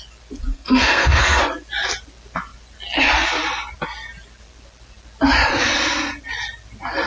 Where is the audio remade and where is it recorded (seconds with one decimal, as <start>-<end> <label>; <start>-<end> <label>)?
0.0-0.5 recorded; 0.5-1.4 remade; 1.4-7.1 recorded